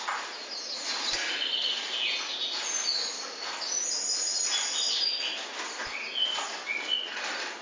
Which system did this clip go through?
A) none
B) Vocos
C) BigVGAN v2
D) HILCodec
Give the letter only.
A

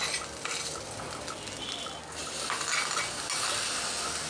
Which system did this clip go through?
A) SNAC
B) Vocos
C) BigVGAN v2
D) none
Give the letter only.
D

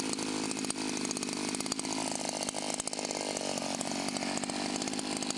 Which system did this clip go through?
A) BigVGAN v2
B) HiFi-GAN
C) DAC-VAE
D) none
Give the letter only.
D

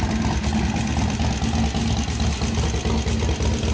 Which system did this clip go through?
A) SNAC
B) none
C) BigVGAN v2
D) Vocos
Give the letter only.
B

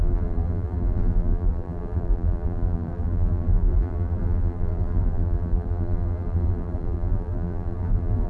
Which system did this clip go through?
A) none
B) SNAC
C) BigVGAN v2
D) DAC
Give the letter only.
C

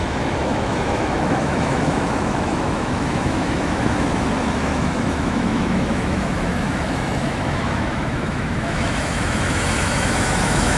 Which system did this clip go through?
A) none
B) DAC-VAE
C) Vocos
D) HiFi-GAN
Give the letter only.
B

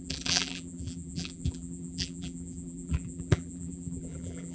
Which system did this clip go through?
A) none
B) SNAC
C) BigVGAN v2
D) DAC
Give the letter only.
C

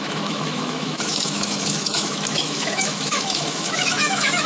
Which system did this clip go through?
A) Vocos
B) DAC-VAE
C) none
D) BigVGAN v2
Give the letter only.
B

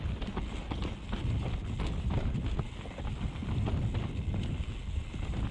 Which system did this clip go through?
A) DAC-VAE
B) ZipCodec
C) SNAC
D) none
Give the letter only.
D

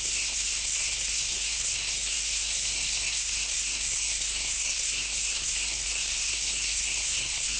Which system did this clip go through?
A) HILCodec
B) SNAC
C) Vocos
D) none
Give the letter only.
B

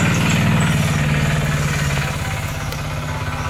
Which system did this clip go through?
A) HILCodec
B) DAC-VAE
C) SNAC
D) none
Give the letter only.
D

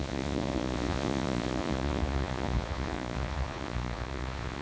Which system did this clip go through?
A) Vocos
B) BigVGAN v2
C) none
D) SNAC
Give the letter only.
A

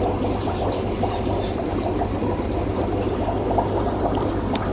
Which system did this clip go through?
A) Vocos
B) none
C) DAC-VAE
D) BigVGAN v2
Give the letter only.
D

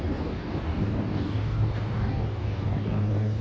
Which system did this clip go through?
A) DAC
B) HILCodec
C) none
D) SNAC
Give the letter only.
A